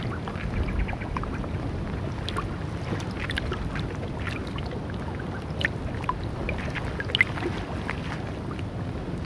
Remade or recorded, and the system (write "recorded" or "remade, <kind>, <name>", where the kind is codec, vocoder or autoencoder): recorded